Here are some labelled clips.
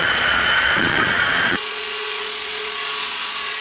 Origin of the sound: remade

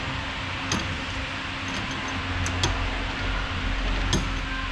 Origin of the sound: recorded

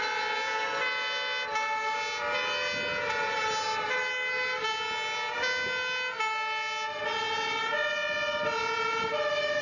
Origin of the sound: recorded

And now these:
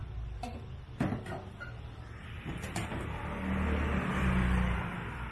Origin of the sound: recorded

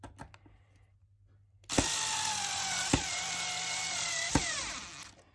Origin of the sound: recorded